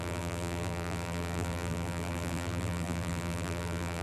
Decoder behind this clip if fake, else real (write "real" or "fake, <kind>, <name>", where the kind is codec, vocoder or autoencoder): fake, vocoder, BigVGAN v2